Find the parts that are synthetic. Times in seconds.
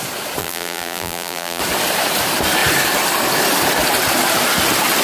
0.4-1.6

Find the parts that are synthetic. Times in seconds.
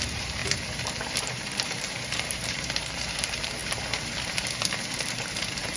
0.0-5.8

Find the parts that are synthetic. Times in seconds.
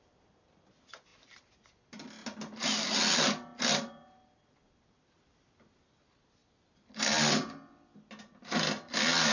none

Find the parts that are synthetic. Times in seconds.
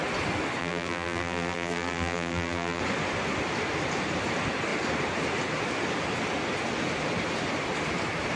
0.6-2.8